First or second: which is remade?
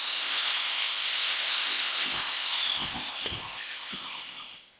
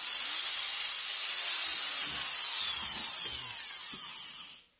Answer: first